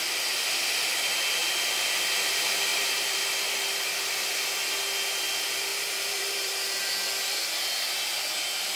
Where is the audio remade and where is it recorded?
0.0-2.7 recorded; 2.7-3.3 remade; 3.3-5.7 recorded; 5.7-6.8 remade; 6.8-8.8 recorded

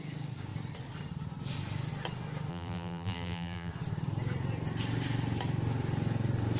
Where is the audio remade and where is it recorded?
0.0-2.5 recorded; 2.5-3.7 remade; 3.7-6.6 recorded

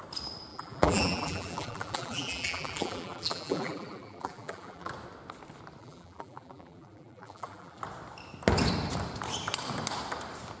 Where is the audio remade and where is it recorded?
0.0-0.5 recorded; 0.5-4.9 remade; 4.9-5.8 recorded; 5.8-7.8 remade; 7.8-10.6 recorded

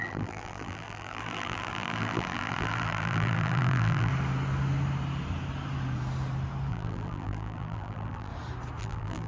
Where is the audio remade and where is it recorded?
0.0-4.1 remade; 4.1-6.7 recorded; 6.7-8.3 remade; 8.3-8.8 recorded; 8.8-9.3 remade

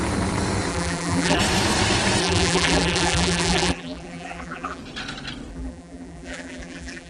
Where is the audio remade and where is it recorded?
0.0-0.7 recorded; 0.7-1.4 remade; 1.4-2.2 recorded; 2.2-4.8 remade; 4.8-5.5 recorded; 5.5-7.1 remade

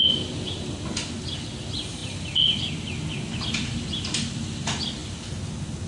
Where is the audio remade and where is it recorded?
0.0-5.9 recorded

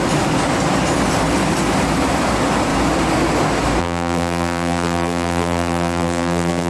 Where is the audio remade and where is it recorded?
0.0-3.8 recorded; 3.8-6.7 remade

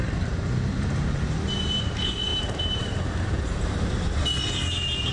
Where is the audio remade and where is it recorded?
0.0-0.7 recorded; 0.7-1.8 remade; 1.8-2.3 recorded; 2.3-4.2 remade; 4.2-5.1 recorded